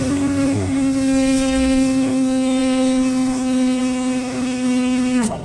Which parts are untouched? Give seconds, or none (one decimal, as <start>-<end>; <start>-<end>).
none